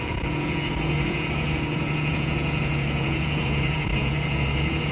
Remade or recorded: remade